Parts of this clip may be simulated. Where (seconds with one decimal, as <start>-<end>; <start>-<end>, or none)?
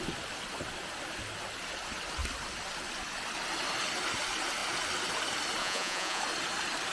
5.6-6.2